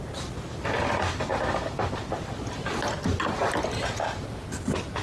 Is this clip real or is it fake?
real